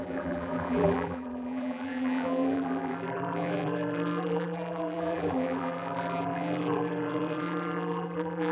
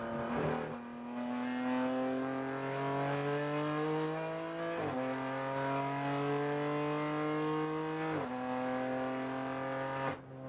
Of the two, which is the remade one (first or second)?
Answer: first